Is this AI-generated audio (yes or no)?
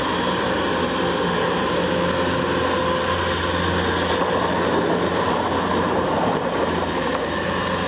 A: no